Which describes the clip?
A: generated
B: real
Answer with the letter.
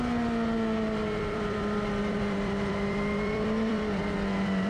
A